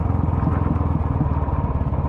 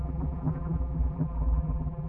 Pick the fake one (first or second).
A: second